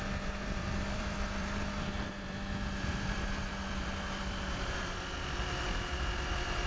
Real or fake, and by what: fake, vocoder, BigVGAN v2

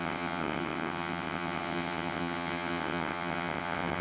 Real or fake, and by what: fake, vocoder, WaveNeXt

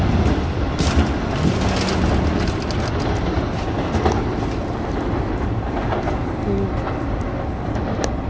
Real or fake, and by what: real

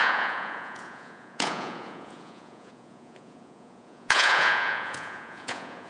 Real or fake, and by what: fake, vocoder, Vocos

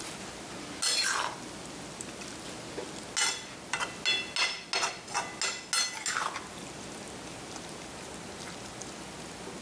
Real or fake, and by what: real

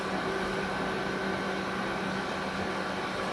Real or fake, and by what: real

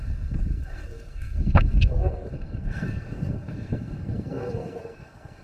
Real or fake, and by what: fake, codec, SNAC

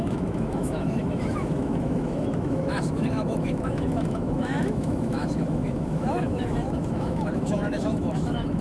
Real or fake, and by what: fake, autoencoder, DAC-VAE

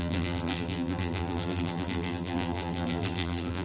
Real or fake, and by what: fake, vocoder, BigVGAN v2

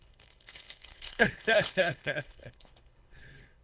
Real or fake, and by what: fake, codec, HILCodec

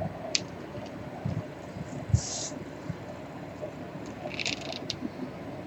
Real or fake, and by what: fake, vocoder, BigVGAN v2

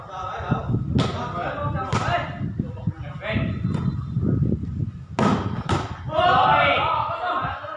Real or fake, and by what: real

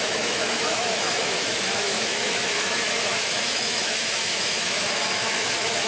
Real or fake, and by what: fake, autoencoder, DAC-VAE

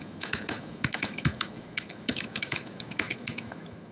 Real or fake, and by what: fake, autoencoder, DAC-VAE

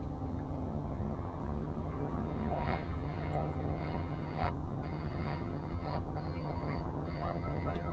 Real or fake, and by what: fake, vocoder, HiFi-GAN